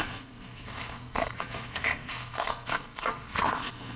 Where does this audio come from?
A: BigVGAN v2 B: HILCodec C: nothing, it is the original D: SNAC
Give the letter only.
D